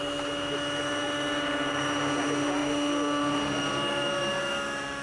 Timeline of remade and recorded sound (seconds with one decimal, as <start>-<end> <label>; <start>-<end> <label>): 0.0-5.0 recorded